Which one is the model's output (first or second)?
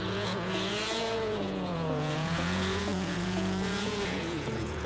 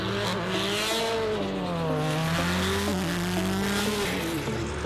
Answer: first